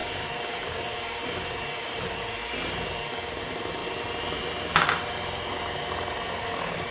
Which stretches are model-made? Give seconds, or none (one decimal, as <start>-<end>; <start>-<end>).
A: 0.0-3.1; 3.8-4.4